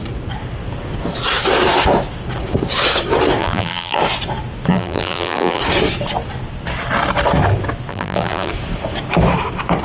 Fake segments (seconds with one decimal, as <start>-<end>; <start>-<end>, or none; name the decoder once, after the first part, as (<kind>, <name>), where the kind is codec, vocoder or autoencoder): 3.4-4.0 (vocoder, BigVGAN v2); 4.7-5.6; 7.9-8.5